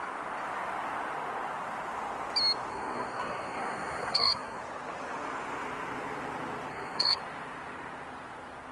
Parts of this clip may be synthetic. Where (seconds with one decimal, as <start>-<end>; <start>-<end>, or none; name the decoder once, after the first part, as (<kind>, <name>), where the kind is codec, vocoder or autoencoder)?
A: 2.7-4.6 (codec, SNAC); 6.7-7.2